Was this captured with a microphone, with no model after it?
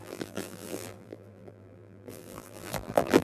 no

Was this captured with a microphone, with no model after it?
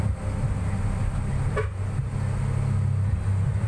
yes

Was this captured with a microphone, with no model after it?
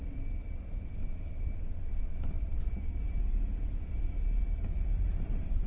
no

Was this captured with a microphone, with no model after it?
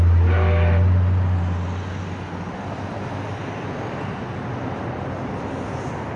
yes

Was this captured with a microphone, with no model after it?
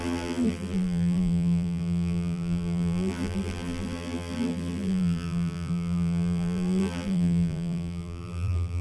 no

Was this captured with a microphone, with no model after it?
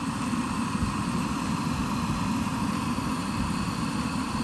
no